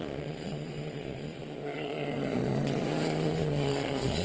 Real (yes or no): no